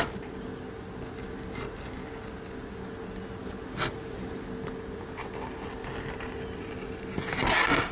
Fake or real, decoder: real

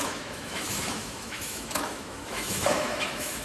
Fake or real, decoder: fake, autoencoder, DAC-VAE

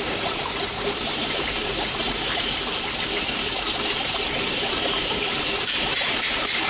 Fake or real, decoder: fake, vocoder, BigVGAN v2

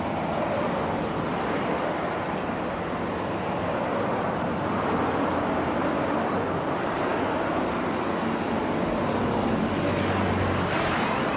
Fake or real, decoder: real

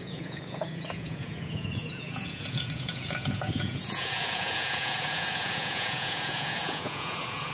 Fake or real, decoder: fake, vocoder, Vocos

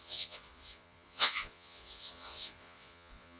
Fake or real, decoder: fake, vocoder, Vocos